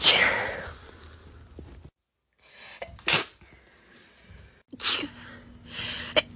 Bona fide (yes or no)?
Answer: yes